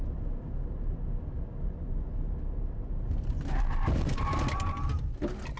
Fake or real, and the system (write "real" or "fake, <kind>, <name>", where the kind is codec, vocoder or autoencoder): real